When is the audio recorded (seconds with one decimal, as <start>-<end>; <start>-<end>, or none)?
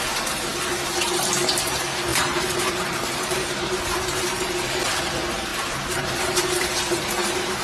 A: 0.0-2.1; 5.0-5.5